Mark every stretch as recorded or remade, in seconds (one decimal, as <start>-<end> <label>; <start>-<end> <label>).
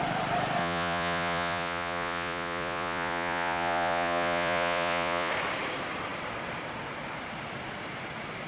0.0-0.6 recorded; 0.6-5.3 remade; 5.3-8.5 recorded